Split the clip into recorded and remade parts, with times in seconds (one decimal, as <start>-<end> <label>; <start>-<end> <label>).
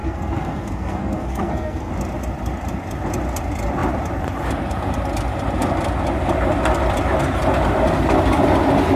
0.0-1.9 remade; 1.9-9.0 recorded